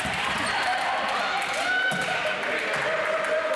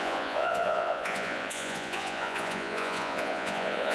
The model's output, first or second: second